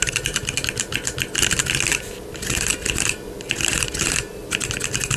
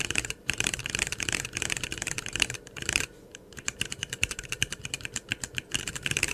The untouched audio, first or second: first